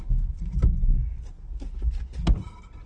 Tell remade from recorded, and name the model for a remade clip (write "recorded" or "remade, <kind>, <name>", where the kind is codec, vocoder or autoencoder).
recorded